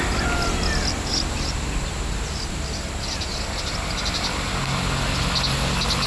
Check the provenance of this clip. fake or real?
real